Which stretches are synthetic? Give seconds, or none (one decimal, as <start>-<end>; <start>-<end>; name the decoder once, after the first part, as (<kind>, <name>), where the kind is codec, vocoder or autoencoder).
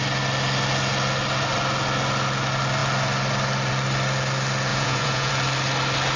4.7-5.3 (vocoder, Vocos)